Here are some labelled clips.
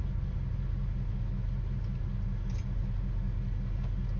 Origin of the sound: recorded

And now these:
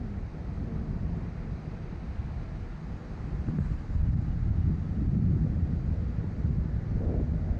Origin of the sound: recorded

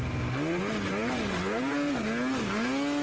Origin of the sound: recorded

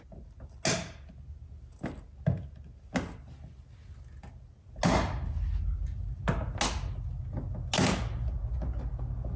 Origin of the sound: recorded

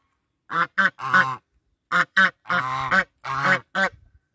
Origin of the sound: recorded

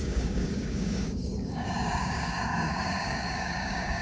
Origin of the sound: remade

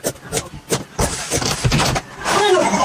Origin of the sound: recorded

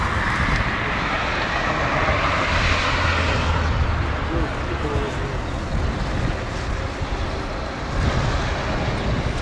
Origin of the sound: recorded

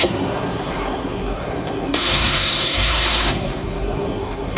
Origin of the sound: remade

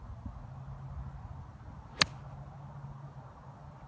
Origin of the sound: recorded